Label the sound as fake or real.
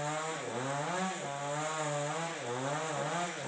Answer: real